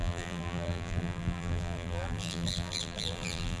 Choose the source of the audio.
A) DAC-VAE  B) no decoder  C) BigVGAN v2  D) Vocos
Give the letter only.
C